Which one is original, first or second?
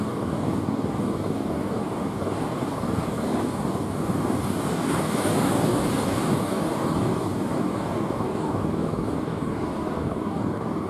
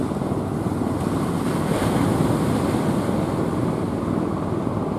second